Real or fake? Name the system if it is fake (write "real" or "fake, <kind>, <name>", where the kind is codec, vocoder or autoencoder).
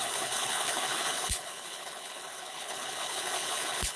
fake, codec, HILCodec